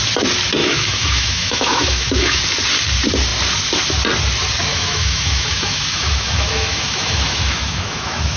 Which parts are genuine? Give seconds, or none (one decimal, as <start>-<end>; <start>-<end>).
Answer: 0.0-0.6; 2.4-4.7